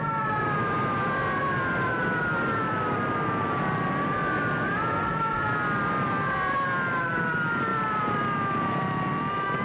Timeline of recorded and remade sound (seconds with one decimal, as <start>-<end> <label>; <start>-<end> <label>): 0.0-9.6 recorded